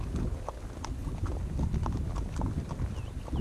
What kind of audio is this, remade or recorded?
recorded